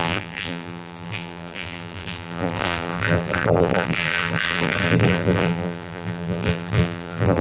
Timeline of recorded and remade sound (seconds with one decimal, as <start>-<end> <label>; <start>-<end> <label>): 0.0-7.4 remade